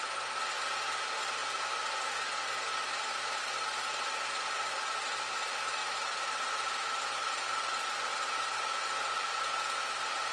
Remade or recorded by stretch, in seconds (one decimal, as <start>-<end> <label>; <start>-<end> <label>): 0.0-5.8 recorded; 5.8-7.0 remade; 7.0-8.1 recorded; 8.1-9.3 remade; 9.3-10.3 recorded